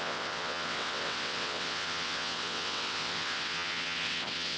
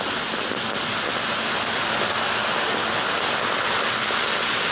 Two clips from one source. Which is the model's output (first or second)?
first